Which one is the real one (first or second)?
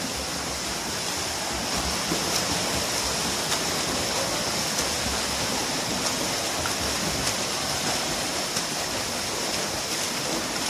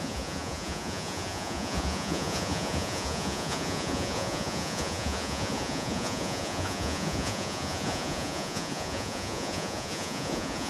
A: first